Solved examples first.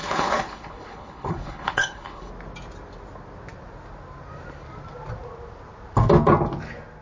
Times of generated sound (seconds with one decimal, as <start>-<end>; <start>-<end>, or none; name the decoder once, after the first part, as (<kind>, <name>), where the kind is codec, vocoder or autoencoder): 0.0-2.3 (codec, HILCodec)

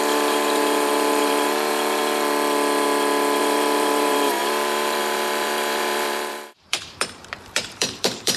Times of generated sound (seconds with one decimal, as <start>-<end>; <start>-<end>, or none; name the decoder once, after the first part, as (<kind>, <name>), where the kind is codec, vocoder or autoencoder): 0.0-2.0 (vocoder, BigVGAN v2); 3.4-8.4

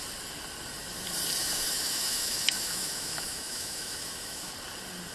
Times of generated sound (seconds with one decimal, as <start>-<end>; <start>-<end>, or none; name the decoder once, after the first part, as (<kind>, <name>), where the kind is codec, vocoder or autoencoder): 1.4-4.5 (autoencoder, DAC-VAE)

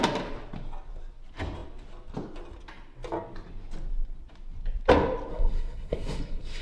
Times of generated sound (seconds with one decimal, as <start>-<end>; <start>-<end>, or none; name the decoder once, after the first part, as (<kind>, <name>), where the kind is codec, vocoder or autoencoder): 5.3-6.6 (codec, SNAC)

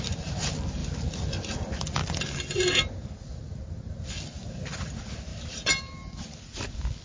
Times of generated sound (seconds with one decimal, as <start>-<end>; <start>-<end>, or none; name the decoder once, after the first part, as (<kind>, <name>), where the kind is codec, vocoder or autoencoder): none

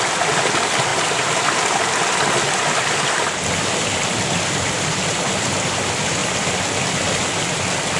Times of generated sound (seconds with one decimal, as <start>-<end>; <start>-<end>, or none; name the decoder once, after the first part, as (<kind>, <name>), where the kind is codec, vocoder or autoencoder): none

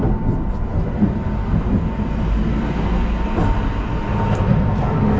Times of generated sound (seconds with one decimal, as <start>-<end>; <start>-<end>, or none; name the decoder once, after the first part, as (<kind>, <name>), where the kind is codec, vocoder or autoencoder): none